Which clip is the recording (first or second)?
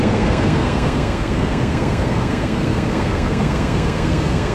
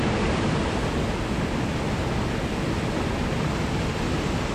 second